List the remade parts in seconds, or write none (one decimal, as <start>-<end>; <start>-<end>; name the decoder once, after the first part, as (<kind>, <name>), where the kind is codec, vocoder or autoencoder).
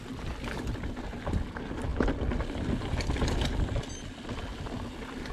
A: none